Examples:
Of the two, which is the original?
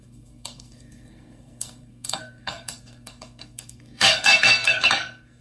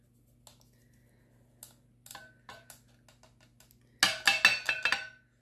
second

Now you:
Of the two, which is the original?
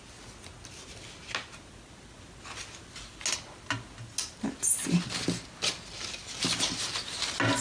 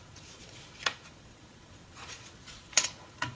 first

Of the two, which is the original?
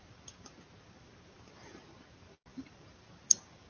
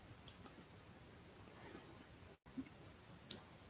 second